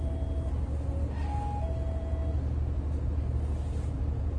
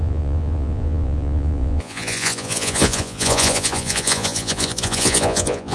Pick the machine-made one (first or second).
second